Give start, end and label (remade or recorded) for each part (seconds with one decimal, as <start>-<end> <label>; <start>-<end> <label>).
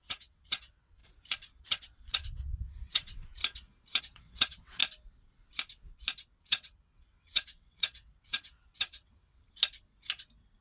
0.0-1.0 remade; 1.0-1.6 recorded; 1.6-3.4 remade; 3.4-4.0 recorded; 4.0-4.8 remade; 4.8-6.4 recorded; 6.4-9.4 remade; 9.4-10.6 recorded